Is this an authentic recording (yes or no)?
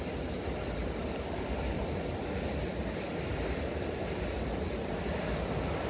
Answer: yes